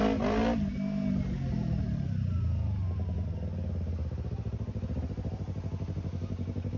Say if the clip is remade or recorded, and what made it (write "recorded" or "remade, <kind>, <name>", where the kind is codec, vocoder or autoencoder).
recorded